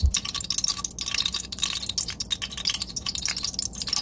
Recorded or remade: recorded